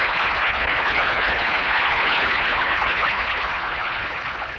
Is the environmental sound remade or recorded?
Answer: remade